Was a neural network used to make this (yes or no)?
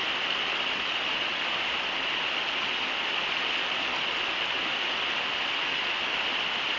no